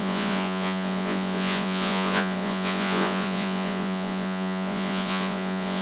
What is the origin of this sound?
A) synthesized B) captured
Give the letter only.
A